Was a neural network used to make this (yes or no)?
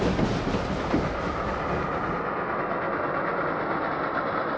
no